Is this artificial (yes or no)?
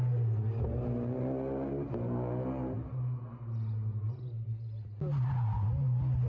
no